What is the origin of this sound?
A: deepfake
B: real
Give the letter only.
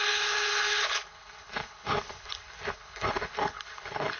A